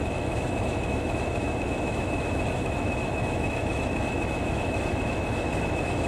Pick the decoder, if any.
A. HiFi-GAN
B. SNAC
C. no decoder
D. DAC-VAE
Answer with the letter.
D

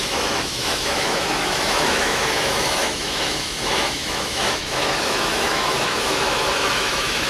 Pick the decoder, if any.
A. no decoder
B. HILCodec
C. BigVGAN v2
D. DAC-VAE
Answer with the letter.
D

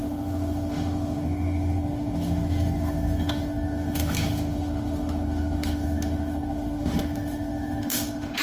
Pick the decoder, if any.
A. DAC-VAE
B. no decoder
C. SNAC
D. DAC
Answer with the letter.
A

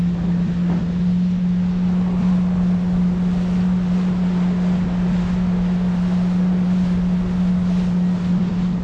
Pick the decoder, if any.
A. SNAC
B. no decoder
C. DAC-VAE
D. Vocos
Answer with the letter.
B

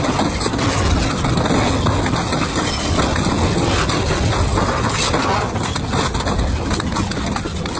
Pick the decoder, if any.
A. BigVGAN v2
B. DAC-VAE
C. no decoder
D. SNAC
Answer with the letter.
C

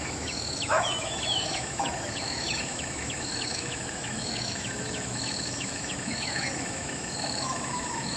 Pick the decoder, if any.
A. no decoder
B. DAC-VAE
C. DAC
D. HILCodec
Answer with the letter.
B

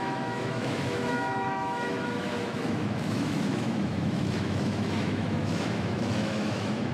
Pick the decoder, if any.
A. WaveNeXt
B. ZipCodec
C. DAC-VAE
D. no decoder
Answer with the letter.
C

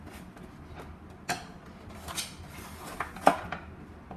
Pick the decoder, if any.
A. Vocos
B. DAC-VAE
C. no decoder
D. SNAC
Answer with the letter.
C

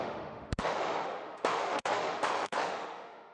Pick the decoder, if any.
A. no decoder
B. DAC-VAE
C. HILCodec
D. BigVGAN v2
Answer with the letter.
B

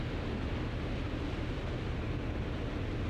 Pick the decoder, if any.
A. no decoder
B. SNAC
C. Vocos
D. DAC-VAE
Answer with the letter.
A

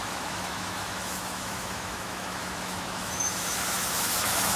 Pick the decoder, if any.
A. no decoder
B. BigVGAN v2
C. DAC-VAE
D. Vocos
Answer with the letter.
C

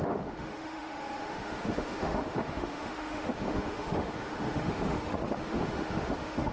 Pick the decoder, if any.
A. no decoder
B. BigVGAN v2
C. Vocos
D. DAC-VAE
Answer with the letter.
D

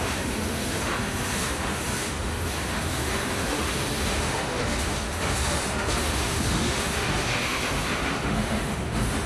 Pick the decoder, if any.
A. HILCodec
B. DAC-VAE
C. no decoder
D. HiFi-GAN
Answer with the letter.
B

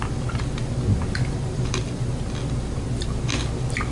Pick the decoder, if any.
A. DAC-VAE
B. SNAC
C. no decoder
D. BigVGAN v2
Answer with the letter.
C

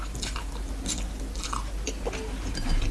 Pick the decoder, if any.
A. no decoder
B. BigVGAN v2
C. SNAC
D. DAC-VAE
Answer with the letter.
A